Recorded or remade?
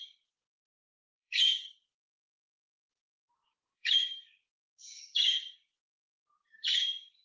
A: remade